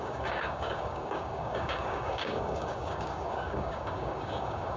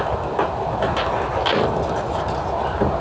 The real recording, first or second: second